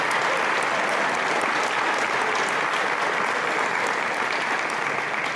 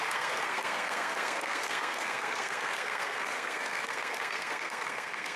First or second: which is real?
first